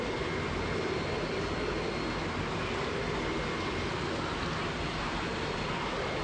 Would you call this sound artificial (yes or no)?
no